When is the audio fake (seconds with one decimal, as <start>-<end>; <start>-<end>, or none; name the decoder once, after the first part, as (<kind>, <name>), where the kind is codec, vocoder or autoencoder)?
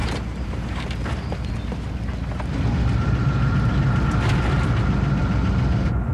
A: 0.0-1.5 (vocoder, BigVGAN v2)